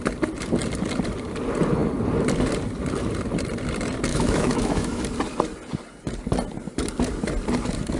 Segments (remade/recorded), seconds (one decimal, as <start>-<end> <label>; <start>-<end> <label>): 0.0-4.1 recorded; 4.1-5.0 remade; 5.0-8.0 recorded